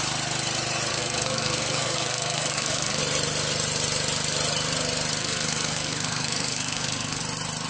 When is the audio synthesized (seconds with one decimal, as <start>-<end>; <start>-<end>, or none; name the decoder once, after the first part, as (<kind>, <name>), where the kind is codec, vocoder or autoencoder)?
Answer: 0.9-3.0 (codec, SNAC); 5.2-7.2